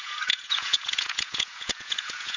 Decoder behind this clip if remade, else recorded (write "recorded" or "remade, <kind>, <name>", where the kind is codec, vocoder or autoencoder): remade, vocoder, Vocos